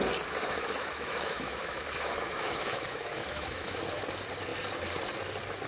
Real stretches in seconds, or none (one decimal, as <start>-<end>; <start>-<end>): 0.0-0.4; 3.8-5.7